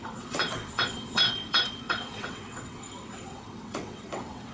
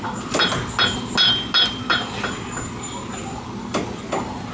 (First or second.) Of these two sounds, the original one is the second